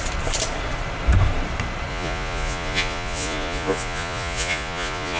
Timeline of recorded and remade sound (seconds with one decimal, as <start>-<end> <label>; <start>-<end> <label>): 0.0-1.9 recorded; 1.9-5.2 remade